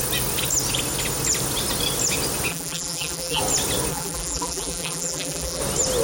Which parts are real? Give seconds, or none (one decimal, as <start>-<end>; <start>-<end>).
0.0-2.5; 3.4-3.9; 5.6-6.0